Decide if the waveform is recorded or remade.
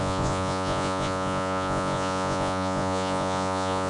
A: remade